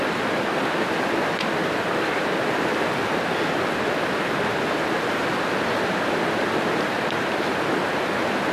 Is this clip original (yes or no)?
yes